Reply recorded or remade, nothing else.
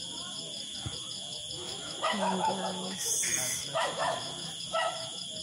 remade